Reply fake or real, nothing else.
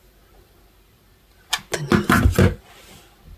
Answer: real